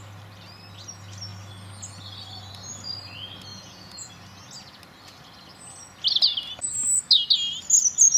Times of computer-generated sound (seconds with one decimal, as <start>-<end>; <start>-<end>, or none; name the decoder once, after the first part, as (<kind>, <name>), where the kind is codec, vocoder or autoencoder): 3.5-4.1 (vocoder, Vocos)